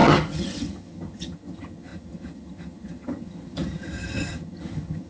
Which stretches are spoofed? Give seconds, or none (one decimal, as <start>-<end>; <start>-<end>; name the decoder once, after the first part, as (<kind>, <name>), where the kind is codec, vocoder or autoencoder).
0.0-5.1 (vocoder, HiFi-GAN)